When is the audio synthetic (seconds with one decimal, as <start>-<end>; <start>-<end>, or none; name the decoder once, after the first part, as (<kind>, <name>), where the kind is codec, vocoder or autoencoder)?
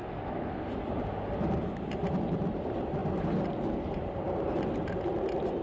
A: 0.0-0.5 (autoencoder, DAC-VAE)